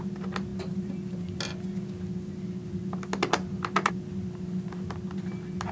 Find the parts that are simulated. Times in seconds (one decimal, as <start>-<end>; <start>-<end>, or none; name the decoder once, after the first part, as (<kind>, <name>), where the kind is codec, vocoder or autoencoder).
none